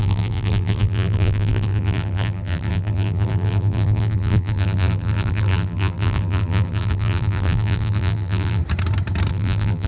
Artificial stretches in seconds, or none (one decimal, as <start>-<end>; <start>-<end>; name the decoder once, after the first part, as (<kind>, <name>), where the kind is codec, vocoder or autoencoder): 0.0-8.6 (vocoder, BigVGAN v2); 9.3-9.9